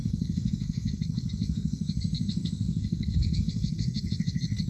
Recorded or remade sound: remade